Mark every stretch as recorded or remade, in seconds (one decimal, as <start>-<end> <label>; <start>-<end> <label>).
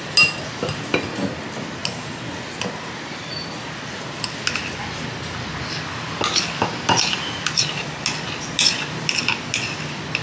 0.0-10.2 recorded